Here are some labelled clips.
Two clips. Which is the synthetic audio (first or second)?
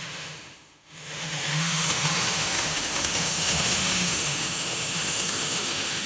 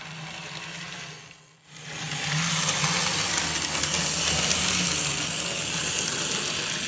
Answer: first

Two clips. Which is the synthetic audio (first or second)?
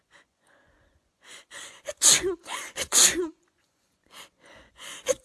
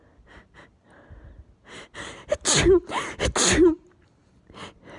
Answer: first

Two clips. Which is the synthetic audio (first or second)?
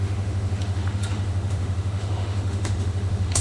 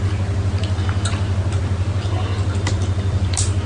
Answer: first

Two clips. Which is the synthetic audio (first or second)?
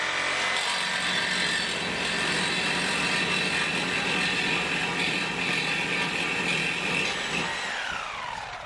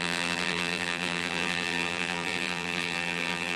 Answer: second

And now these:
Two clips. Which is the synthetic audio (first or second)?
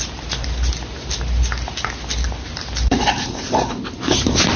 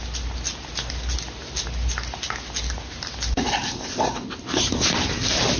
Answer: first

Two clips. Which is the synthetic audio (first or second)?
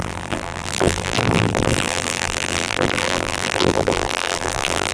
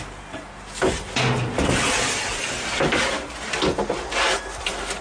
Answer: first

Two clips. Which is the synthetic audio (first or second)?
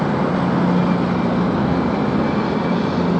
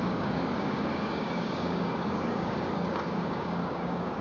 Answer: second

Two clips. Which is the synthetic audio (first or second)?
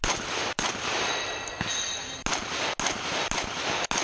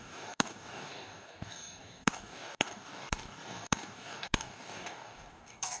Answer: second